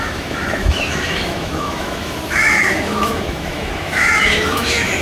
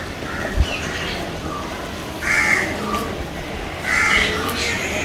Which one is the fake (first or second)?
first